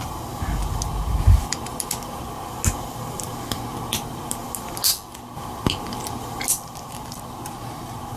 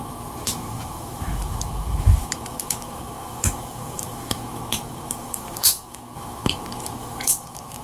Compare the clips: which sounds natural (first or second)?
first